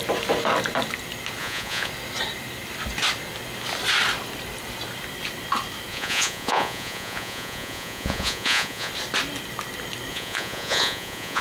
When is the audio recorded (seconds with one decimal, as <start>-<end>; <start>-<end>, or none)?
0.0-1.4; 1.9-5.9; 8.9-10.1